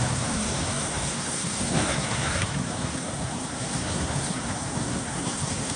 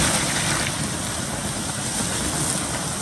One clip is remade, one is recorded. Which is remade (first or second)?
first